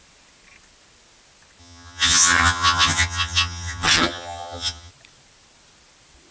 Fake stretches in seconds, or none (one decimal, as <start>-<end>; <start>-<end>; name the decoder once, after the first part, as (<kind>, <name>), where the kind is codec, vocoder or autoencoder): 1.6-4.9 (vocoder, HiFi-GAN)